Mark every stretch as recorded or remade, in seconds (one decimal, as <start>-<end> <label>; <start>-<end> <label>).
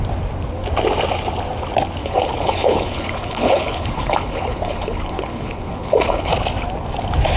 0.0-2.0 recorded; 2.0-6.3 remade; 6.3-7.4 recorded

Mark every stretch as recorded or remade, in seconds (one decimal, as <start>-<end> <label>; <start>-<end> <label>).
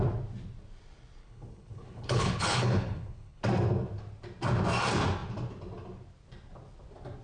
0.0-1.2 recorded; 1.2-3.4 remade; 3.4-7.2 recorded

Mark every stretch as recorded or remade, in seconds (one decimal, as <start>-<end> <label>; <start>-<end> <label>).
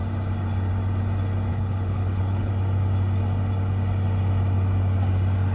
0.0-1.5 recorded; 1.5-2.5 remade; 2.5-5.5 recorded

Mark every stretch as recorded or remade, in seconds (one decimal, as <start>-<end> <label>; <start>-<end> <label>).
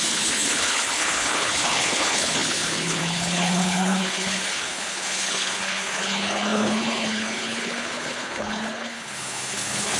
0.0-10.0 remade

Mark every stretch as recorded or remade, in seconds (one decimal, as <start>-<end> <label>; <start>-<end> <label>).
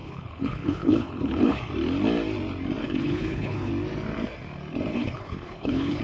0.0-1.6 remade; 1.6-2.8 recorded; 2.8-3.7 remade; 3.7-4.9 recorded; 4.9-6.0 remade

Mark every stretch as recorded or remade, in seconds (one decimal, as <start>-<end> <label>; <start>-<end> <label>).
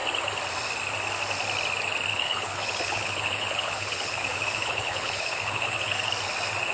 0.0-2.1 recorded; 2.1-6.1 remade; 6.1-6.7 recorded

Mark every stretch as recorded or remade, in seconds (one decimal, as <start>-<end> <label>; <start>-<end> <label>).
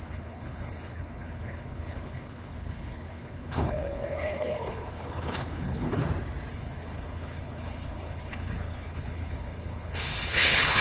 0.0-6.0 remade; 6.0-6.5 recorded; 6.5-10.8 remade